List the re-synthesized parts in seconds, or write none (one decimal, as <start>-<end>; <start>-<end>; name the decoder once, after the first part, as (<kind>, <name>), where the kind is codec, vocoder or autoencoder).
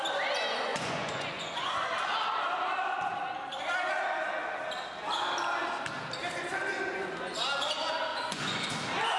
0.7-1.9 (vocoder, Vocos); 8.1-8.7